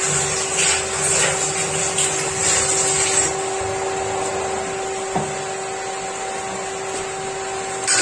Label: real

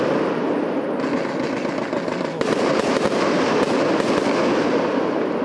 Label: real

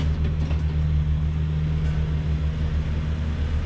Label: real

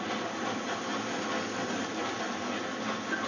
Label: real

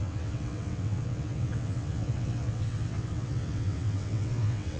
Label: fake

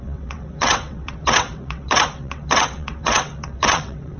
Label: fake